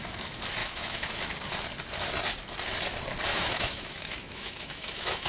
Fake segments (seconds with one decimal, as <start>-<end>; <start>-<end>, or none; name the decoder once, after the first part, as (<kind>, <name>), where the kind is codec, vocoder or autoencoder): 0.6-1.3 (autoencoder, DAC-VAE); 3.3-5.3